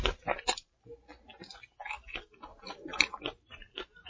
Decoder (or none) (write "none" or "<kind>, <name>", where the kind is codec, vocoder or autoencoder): none